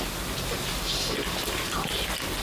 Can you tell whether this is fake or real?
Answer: real